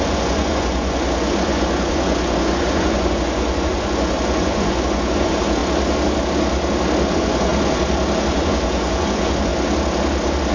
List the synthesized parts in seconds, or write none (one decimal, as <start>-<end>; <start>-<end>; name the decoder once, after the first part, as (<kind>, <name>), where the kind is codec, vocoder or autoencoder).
0.0-5.6 (vocoder, Vocos); 7.1-7.5; 8.3-9.5